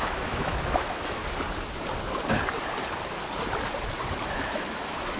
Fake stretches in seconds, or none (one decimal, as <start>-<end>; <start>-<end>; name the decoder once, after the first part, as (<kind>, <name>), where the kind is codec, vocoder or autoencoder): 0.0-1.2 (autoencoder, DAC-VAE); 4.3-5.2